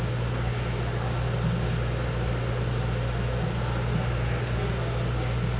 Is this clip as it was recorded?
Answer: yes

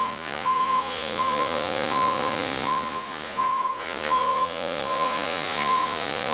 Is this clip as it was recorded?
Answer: no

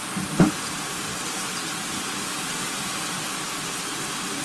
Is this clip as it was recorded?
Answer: yes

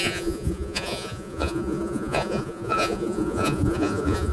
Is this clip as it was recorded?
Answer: no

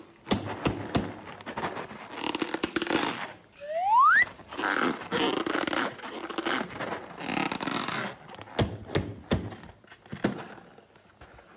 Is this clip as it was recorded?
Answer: yes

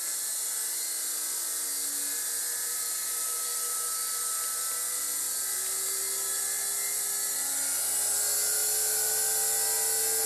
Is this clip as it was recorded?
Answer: yes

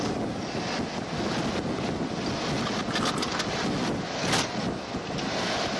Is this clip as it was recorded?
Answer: yes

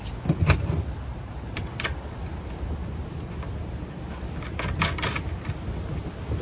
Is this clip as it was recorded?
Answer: yes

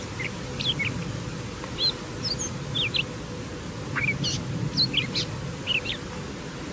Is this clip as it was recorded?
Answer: yes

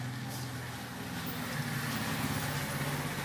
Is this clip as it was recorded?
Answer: yes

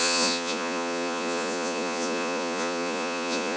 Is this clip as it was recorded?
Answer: no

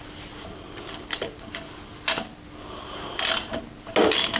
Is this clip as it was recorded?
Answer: yes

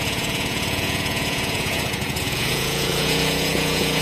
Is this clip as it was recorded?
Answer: no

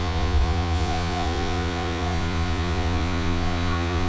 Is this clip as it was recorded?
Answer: no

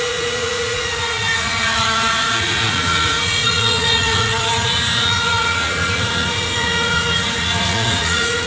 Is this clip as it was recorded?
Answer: no